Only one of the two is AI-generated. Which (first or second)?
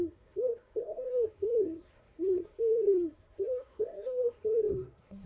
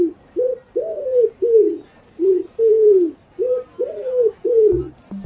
first